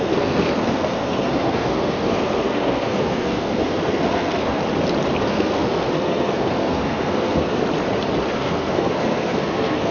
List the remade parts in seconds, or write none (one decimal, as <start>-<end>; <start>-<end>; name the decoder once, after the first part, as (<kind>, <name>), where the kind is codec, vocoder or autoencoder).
0.0-4.6 (codec, SNAC); 5.2-7.6; 8.3-9.9